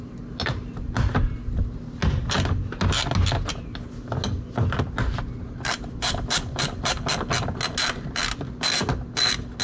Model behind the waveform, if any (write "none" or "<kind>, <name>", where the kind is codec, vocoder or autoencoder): none